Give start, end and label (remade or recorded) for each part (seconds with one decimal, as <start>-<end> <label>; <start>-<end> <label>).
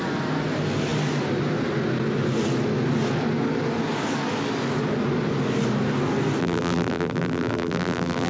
0.0-6.4 recorded; 6.4-8.3 remade